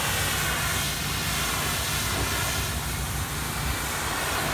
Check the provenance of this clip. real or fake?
real